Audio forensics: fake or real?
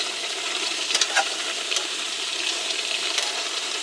fake